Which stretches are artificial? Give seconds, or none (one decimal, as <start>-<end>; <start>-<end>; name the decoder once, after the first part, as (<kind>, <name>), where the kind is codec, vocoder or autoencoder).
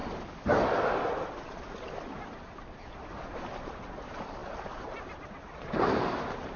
3.4-6.6 (vocoder, BigVGAN v2)